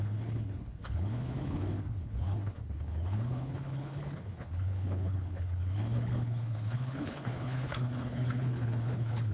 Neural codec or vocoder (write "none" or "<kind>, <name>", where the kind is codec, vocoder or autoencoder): codec, HILCodec